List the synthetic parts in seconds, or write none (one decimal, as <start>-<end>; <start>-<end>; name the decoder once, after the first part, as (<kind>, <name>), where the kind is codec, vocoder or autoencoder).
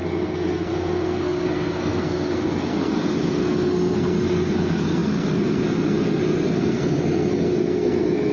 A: 0.0-8.3 (codec, SNAC)